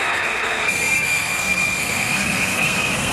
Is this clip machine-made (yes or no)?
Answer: yes